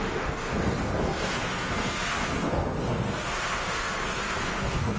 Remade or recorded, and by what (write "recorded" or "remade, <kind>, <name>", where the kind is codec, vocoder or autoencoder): remade, codec, SNAC